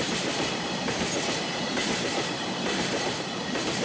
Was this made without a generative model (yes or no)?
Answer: no